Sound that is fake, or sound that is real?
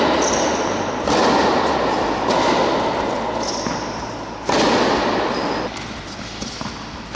real